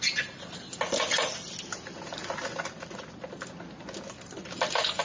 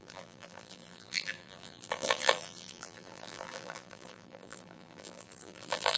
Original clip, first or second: first